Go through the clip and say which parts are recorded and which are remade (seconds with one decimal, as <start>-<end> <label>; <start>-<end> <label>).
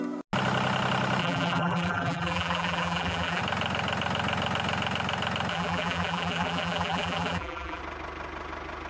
0.0-1.2 recorded; 1.2-3.4 remade; 3.4-5.5 recorded; 5.5-7.8 remade; 7.8-8.9 recorded